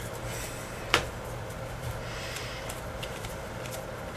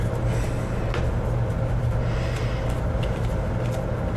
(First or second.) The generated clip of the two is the first